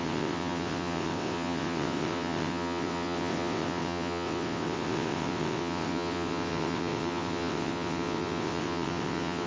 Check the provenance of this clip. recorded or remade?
remade